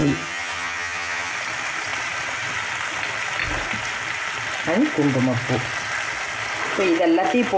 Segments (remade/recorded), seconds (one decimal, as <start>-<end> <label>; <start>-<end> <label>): 0.0-1.3 remade; 1.3-7.6 recorded